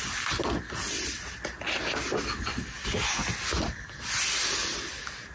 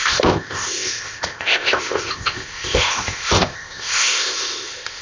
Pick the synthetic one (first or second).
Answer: second